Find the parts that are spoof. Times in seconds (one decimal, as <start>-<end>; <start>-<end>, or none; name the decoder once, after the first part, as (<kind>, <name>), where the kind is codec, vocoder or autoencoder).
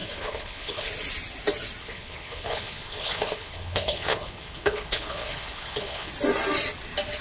0.0-0.9 (codec, HILCodec); 1.8-6.1